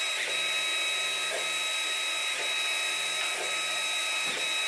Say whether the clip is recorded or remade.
recorded